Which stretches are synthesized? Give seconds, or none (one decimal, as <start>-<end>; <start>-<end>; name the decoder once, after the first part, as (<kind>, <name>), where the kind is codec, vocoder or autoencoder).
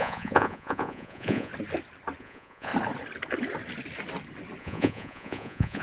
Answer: 0.0-1.5 (vocoder, Vocos); 2.2-2.7; 4.6-5.8